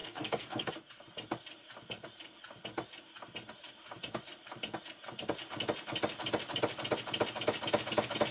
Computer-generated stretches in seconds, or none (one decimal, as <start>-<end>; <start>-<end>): 0.0-0.7